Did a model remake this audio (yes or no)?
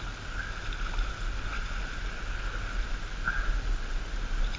no